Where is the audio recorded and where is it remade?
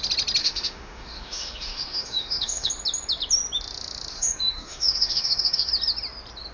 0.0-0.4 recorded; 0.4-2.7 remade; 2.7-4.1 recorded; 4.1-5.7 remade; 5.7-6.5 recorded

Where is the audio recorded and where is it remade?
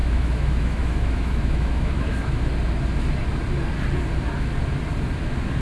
0.0-2.5 remade; 2.5-5.6 recorded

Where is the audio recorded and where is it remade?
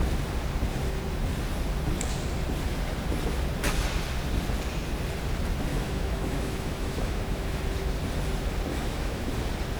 0.0-5.7 recorded; 5.7-7.6 remade; 7.6-8.7 recorded; 8.7-9.3 remade; 9.3-9.8 recorded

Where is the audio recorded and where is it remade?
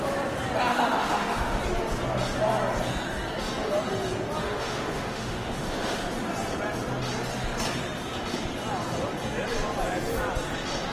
0.0-0.7 recorded; 0.7-1.6 remade; 1.6-4.4 recorded; 4.4-6.0 remade; 6.0-10.9 recorded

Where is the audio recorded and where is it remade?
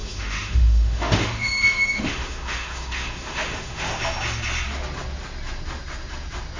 0.0-4.0 remade; 4.0-6.6 recorded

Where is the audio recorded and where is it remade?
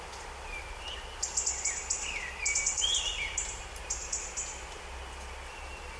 0.0-6.0 recorded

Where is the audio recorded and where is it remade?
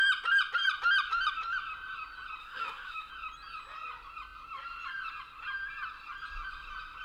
0.0-2.4 recorded; 2.4-3.1 remade; 3.1-7.0 recorded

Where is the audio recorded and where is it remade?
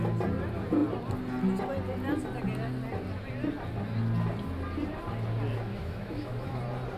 0.0-5.7 recorded; 5.7-6.6 remade; 6.6-7.0 recorded